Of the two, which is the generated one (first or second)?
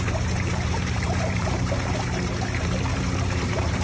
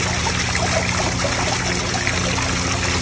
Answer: first